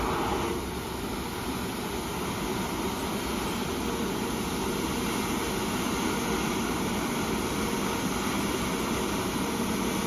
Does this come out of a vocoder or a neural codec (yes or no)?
no